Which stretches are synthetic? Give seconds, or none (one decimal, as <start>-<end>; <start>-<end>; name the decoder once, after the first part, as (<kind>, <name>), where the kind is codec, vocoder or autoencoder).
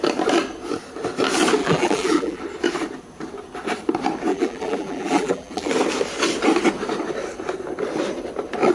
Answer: 1.6-2.4 (vocoder, BigVGAN v2); 4.3-5.7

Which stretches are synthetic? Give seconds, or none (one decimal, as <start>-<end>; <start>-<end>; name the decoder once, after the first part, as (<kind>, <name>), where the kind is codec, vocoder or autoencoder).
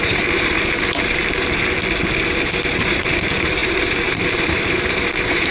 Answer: 0.0-1.2 (vocoder, BigVGAN v2); 2.2-5.5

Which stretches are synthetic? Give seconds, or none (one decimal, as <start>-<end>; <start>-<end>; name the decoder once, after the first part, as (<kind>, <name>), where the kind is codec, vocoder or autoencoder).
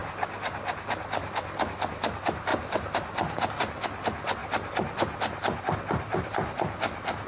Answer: none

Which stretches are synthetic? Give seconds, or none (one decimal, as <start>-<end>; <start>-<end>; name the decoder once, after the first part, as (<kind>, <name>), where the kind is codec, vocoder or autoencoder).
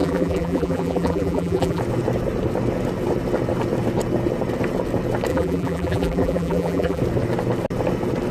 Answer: 0.0-1.8 (vocoder, BigVGAN v2); 5.3-7.0